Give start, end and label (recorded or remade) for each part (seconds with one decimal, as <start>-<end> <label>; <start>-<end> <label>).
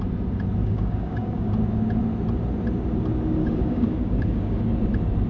0.0-0.6 recorded; 0.6-1.5 remade; 1.5-3.4 recorded; 3.4-4.6 remade; 4.6-5.3 recorded